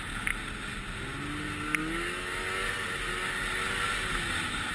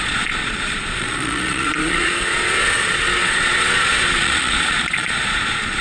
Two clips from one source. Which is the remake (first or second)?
second